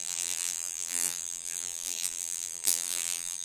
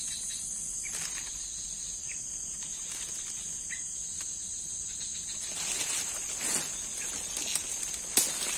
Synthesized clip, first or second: first